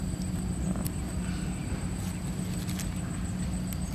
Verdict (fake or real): real